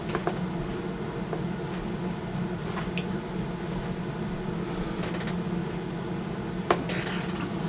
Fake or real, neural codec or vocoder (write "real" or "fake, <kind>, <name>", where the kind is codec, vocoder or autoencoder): real